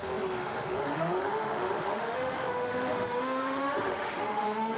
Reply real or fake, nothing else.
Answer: fake